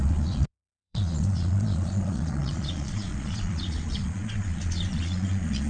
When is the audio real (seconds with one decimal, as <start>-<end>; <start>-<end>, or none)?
none